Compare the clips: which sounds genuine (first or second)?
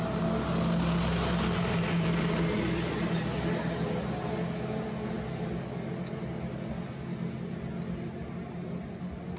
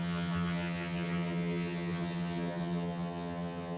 first